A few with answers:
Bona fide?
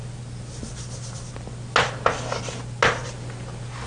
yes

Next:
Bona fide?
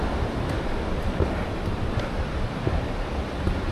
no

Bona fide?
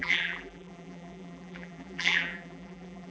no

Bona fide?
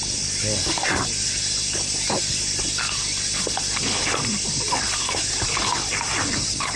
no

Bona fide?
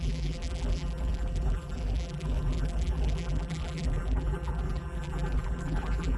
no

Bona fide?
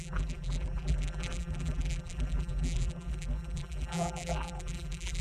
no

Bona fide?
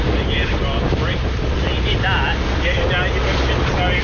yes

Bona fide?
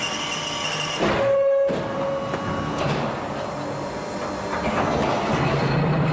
yes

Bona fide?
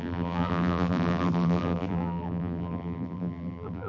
no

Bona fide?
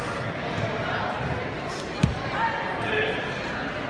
yes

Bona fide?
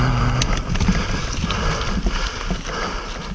yes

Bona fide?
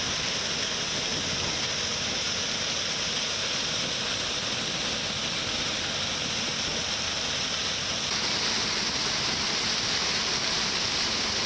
yes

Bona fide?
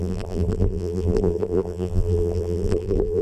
no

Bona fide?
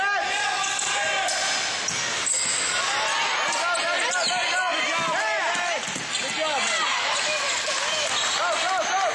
yes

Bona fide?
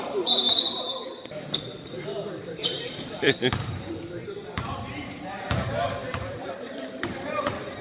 no